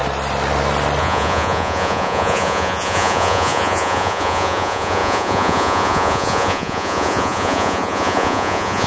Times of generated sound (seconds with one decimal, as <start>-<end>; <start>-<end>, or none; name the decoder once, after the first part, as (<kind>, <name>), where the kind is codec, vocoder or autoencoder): 1.0-8.9 (vocoder, Vocos)